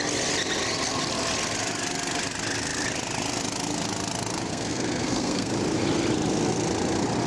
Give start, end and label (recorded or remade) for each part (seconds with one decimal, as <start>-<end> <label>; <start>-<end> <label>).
0.0-4.5 recorded; 4.5-5.5 remade; 5.5-7.3 recorded